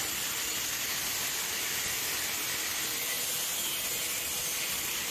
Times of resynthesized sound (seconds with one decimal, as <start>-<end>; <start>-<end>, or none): 0.0-0.9; 4.0-5.1